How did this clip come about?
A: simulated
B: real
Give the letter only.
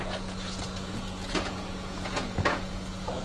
A